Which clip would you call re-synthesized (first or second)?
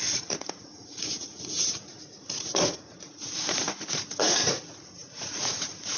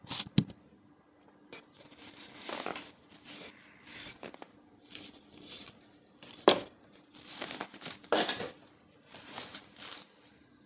first